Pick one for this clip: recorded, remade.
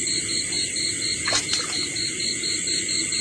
recorded